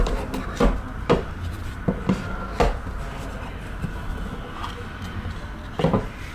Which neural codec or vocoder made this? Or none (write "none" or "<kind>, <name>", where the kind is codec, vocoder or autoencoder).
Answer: none